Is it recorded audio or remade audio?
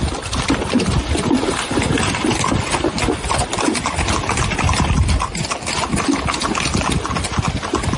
recorded